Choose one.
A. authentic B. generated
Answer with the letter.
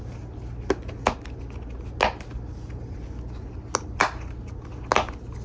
A